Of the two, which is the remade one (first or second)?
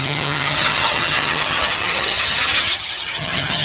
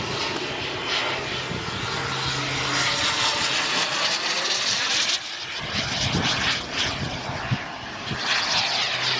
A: first